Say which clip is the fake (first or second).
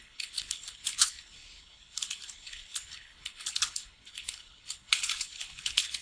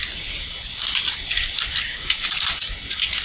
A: first